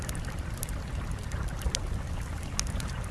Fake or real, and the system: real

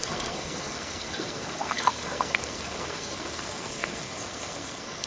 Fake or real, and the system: fake, codec, SNAC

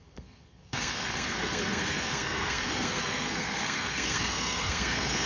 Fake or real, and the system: fake, codec, SNAC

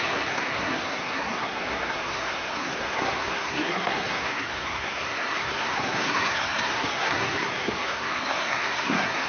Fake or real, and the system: fake, codec, SNAC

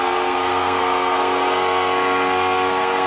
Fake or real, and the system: fake, codec, SNAC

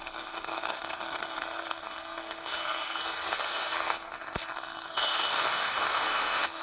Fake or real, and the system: fake, codec, SNAC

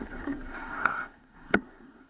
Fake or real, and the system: fake, codec, SNAC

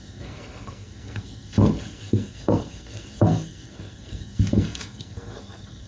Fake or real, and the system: fake, codec, SNAC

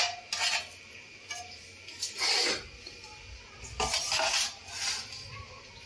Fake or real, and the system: real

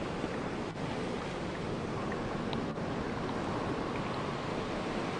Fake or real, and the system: real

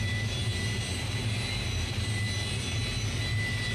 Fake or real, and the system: real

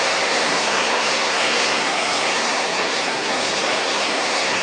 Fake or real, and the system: fake, codec, SNAC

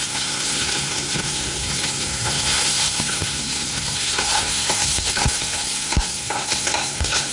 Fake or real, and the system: fake, codec, SNAC